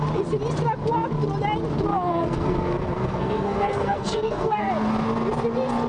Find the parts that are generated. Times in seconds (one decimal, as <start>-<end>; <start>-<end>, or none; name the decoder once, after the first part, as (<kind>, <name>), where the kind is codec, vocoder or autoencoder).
1.9-4.7 (codec, SNAC)